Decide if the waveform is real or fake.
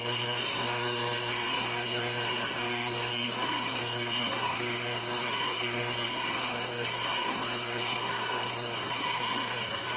fake